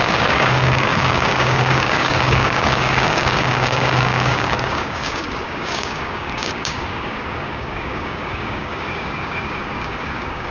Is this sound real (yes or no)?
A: no